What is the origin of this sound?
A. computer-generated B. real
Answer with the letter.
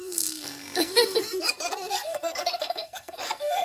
A